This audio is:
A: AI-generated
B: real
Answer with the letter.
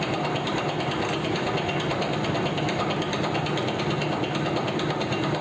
B